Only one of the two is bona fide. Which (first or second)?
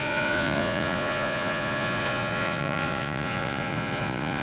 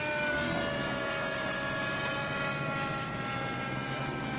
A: second